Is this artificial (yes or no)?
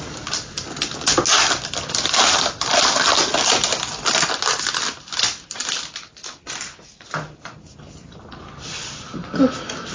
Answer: no